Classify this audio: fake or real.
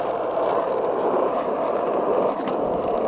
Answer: fake